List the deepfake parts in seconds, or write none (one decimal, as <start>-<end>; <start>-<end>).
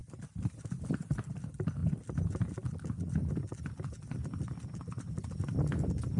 none